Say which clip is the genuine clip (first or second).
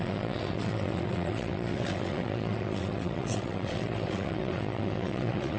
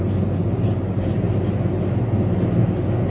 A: second